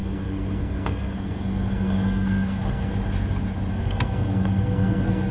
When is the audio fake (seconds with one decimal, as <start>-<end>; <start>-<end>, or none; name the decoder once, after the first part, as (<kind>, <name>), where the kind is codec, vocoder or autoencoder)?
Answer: 0.0-2.9 (codec, SNAC); 3.7-5.3